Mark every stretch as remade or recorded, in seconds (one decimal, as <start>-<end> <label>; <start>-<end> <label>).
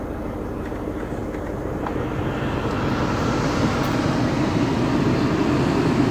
0.0-6.1 recorded